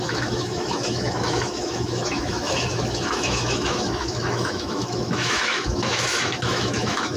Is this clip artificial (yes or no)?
yes